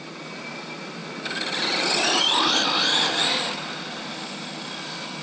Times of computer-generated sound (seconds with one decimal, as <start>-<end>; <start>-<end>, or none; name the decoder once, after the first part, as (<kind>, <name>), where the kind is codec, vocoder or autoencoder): none